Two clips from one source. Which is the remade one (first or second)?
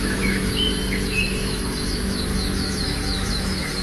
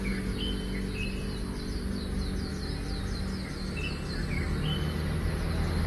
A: first